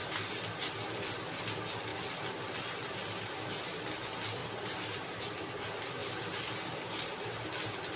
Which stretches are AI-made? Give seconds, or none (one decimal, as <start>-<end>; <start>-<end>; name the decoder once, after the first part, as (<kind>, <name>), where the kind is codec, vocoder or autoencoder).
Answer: 4.4-5.5 (vocoder, BigVGAN v2); 6.0-7.4